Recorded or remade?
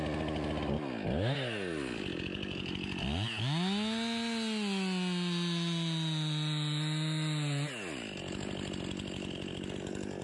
recorded